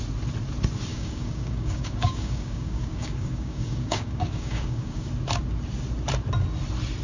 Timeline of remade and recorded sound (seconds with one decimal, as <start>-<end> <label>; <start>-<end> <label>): 0.0-0.9 recorded; 0.9-5.1 remade; 5.1-7.0 recorded